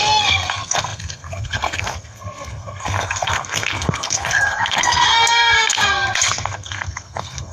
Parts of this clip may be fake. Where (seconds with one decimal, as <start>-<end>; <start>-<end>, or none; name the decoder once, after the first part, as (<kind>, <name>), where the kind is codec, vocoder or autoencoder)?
0.0-7.5 (codec, SNAC)

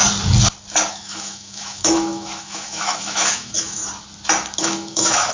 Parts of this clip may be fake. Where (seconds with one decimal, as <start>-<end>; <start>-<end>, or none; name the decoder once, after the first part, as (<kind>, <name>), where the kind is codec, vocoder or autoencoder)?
0.9-3.8 (autoencoder, DAC-VAE); 4.6-5.3

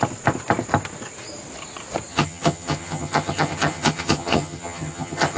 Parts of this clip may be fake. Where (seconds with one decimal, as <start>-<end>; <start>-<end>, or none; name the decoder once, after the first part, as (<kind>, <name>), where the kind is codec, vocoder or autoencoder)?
2.1-5.4 (vocoder, HiFi-GAN)

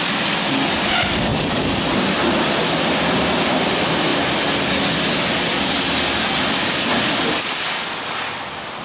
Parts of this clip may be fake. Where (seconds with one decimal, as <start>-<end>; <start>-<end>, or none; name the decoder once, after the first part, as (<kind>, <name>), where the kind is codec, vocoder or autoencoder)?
none

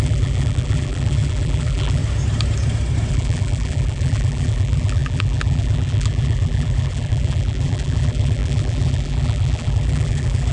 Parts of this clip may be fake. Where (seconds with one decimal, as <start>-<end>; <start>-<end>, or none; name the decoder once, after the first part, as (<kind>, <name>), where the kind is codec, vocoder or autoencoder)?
0.0-2.0 (vocoder, BigVGAN v2); 3.1-10.5

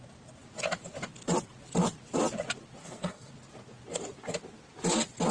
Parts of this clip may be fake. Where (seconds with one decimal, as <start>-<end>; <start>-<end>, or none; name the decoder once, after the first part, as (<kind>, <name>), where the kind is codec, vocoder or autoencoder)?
2.8-3.3 (codec, SNAC)